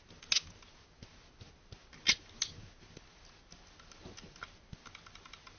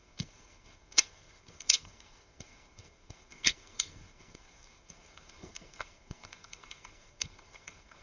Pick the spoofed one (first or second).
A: second